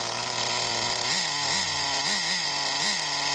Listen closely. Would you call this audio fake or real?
real